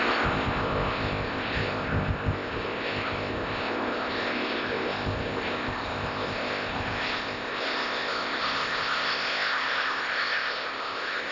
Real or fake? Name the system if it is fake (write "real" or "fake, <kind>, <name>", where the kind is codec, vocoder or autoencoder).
fake, codec, ZipCodec